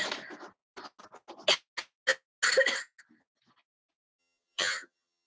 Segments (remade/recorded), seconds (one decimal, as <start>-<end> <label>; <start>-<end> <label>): 0.0-4.2 recorded; 4.2-5.3 remade